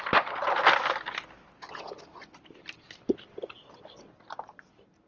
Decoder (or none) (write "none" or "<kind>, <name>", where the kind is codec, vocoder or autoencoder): none